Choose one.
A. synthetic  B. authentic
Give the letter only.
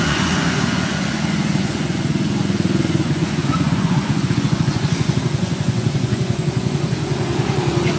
A